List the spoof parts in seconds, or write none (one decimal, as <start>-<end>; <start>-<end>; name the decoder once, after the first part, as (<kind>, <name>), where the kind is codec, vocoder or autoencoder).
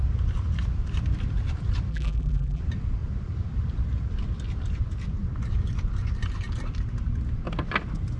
1.9-2.6 (vocoder, BigVGAN v2)